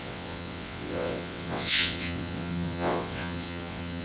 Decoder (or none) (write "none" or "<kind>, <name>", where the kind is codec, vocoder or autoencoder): vocoder, WaveNeXt